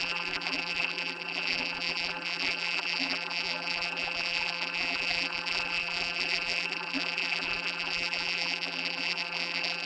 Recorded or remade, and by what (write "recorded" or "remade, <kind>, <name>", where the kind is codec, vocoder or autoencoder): remade, vocoder, BigVGAN v2